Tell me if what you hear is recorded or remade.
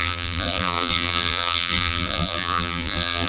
remade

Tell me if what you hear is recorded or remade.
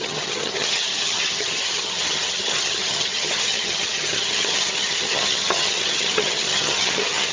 remade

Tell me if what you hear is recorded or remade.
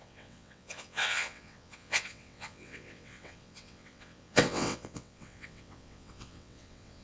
remade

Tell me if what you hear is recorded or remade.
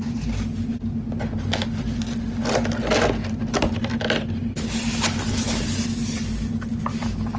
recorded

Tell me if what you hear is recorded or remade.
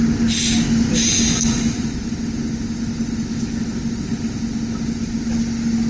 recorded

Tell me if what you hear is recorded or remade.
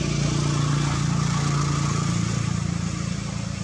recorded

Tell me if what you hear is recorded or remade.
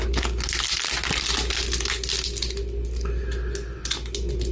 recorded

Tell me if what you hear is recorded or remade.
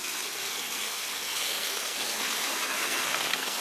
remade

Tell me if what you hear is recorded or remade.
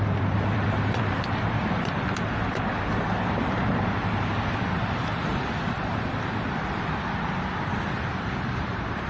remade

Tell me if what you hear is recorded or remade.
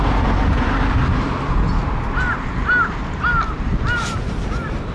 recorded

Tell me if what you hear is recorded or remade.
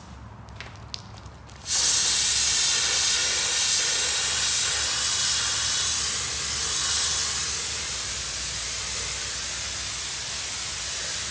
recorded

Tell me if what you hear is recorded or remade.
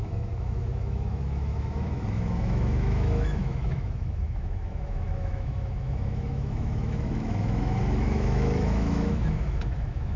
remade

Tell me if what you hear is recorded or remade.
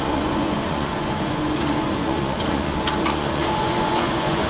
remade